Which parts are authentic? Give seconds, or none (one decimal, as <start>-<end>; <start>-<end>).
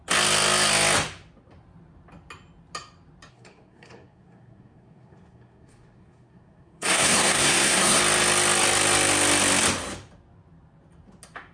0.0-3.3; 8.0-11.5